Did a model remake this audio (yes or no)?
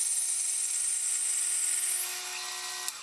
no